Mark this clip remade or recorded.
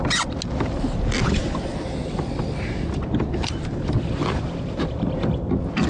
recorded